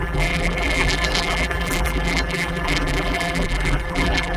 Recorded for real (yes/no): no